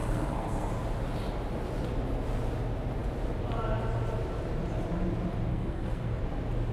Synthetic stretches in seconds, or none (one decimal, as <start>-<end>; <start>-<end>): 0.0-0.7; 5.5-6.2